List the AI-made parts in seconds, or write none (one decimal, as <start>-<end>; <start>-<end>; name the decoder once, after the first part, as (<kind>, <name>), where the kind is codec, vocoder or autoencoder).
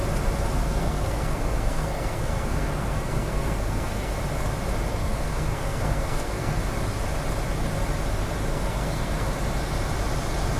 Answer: 0.6-4.2 (codec, SNAC); 4.9-6.6; 8.5-9.3